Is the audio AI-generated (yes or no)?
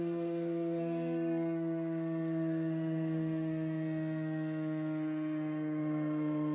yes